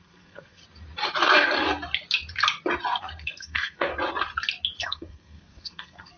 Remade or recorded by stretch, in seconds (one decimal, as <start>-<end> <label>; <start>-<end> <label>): 0.0-0.6 remade; 0.6-3.0 recorded; 3.0-3.9 remade; 3.9-4.8 recorded; 4.8-6.2 remade